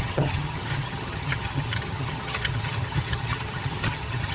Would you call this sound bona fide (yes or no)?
no